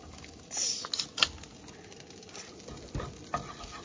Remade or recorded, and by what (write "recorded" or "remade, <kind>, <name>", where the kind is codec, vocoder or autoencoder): recorded